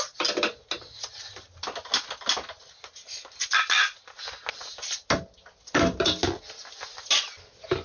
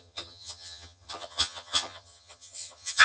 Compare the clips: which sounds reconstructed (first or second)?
second